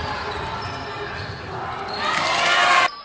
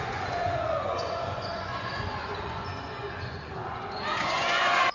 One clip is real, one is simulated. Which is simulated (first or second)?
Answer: second